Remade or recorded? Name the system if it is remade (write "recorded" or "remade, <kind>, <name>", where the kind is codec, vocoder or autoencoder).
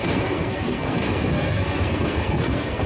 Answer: remade, codec, SNAC